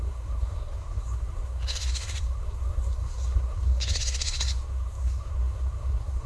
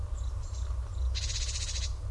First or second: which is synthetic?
first